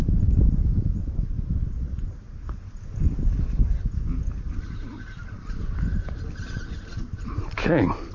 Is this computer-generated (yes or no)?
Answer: no